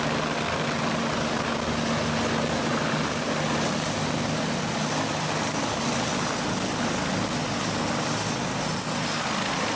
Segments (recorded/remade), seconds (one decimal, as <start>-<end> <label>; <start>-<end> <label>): 0.0-9.8 recorded